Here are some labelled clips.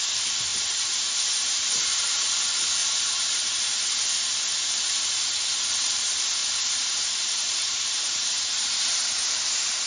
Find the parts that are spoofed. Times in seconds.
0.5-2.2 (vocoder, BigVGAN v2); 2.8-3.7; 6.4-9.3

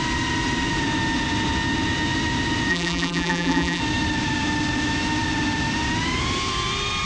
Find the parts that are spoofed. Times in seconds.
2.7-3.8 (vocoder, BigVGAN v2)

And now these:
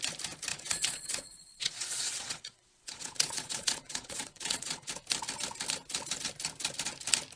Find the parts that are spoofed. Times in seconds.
0.5-4.9 (vocoder, Vocos)